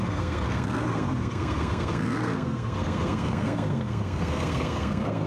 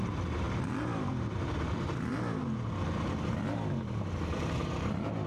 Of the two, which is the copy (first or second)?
first